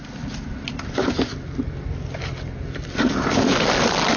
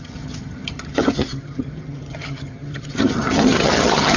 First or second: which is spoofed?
second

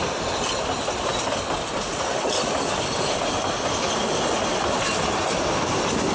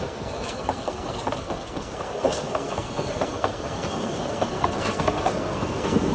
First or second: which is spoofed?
second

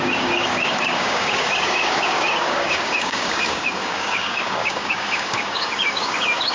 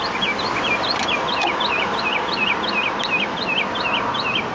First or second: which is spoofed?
first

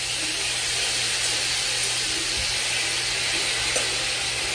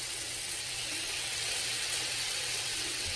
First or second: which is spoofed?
second